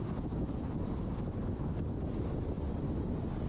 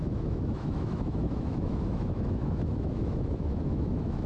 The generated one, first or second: second